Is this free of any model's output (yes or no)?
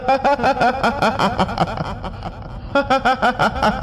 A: yes